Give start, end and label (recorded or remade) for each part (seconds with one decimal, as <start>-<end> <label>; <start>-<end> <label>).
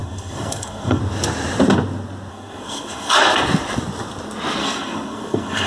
0.0-1.0 remade; 1.0-2.3 recorded; 2.3-3.2 remade; 3.2-4.6 recorded; 4.6-5.7 remade